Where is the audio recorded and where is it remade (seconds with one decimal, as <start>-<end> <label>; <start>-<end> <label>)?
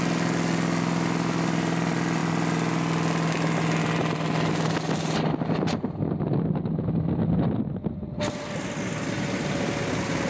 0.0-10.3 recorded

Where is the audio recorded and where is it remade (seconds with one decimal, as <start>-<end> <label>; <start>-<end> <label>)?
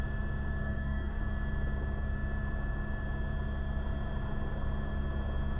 0.0-0.6 recorded; 0.6-1.2 remade; 1.2-5.6 recorded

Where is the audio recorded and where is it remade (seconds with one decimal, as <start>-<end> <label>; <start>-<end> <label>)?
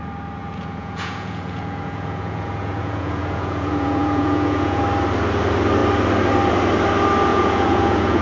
0.0-0.4 recorded; 0.4-4.8 remade; 4.8-7.3 recorded; 7.3-8.2 remade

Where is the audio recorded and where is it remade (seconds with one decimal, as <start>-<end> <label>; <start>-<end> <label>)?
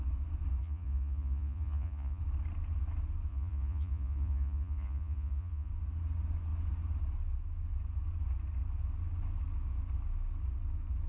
0.0-0.6 recorded; 0.6-2.2 remade; 2.2-3.3 recorded; 3.3-5.7 remade; 5.7-11.1 recorded